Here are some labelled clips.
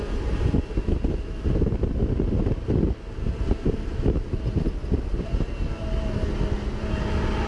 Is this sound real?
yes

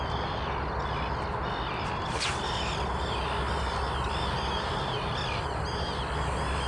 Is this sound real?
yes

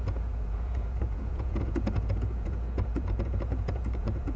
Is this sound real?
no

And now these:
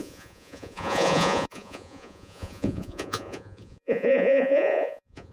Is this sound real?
no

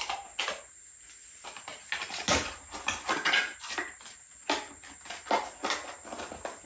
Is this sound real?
yes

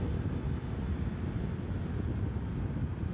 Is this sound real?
yes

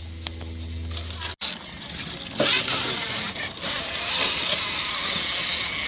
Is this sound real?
yes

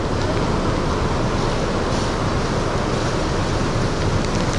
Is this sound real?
yes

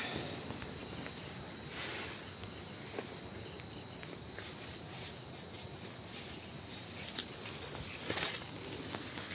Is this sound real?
yes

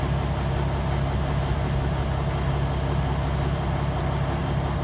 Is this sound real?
yes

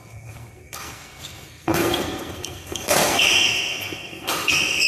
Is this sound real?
no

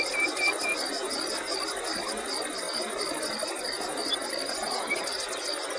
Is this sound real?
yes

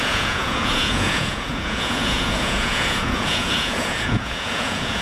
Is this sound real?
no